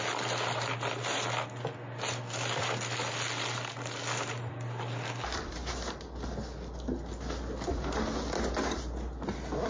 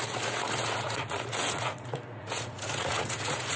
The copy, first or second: second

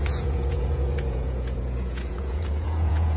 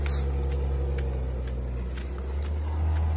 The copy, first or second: first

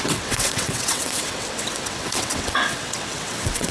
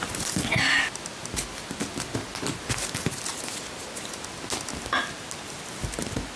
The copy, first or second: first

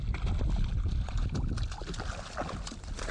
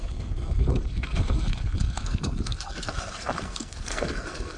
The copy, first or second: second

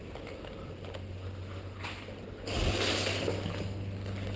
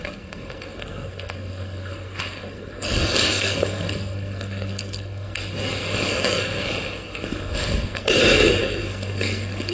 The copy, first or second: second